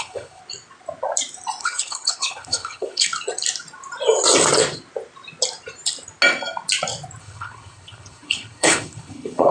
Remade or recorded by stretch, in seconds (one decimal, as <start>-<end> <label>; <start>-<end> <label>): 0.0-0.4 remade; 0.4-1.6 recorded; 1.6-3.1 remade; 3.1-7.2 recorded; 7.2-9.5 remade